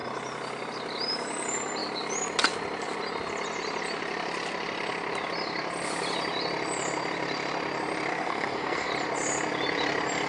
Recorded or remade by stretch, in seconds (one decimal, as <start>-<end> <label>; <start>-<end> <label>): 0.0-8.1 recorded; 8.1-8.9 remade; 8.9-10.3 recorded